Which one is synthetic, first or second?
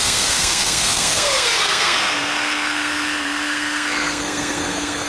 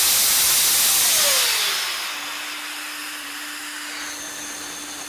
first